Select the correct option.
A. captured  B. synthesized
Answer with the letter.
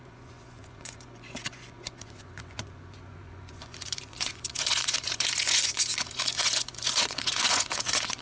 B